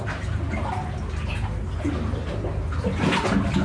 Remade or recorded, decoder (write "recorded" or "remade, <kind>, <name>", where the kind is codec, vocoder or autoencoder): recorded